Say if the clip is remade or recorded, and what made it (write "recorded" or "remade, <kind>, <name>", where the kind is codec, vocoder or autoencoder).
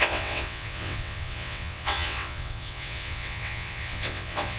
remade, vocoder, WaveNeXt